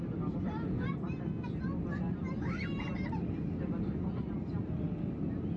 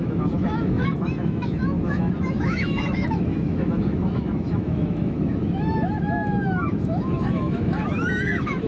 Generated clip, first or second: second